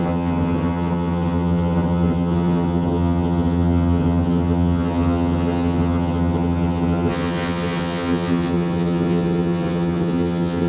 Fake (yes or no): yes